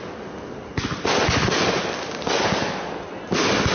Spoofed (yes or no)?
no